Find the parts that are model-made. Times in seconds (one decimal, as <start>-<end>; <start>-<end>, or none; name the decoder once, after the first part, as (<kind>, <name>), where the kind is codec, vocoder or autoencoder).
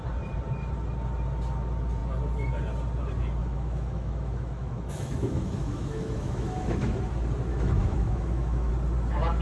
3.4-7.0 (autoencoder, DAC-VAE); 7.5-8.7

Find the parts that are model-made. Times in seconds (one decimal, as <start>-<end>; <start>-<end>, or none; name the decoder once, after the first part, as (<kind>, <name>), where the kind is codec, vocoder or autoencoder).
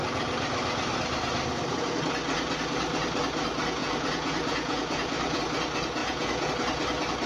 3.8-5.4 (vocoder, Vocos); 6.0-6.5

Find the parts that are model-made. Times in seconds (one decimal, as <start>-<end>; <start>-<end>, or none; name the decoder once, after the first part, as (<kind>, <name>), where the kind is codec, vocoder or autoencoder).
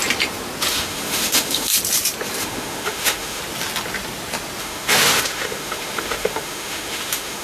0.7-1.7 (autoencoder, DAC-VAE); 2.4-3.4; 4.6-7.4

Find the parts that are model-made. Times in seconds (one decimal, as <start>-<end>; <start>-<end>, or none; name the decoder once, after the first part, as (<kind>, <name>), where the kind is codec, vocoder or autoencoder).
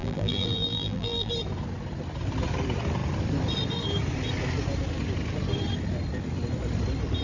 0.0-1.3 (vocoder, BigVGAN v2)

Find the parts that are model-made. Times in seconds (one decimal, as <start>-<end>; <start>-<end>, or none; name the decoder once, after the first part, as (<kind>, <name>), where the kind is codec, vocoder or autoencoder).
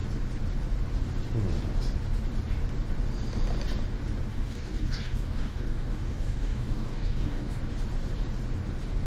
4.3-7.6 (codec, DAC)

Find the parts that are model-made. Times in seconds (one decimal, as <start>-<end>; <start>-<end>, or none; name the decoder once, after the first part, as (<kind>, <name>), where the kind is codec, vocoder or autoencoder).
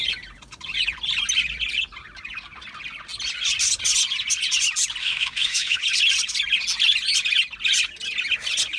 5.0-5.8 (autoencoder, DAC-VAE)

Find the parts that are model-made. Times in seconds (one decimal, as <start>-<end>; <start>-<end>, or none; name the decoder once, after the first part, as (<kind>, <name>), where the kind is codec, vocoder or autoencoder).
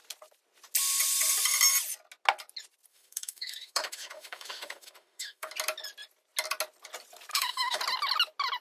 2.9-5.5 (autoencoder, DAC-VAE); 7.3-7.8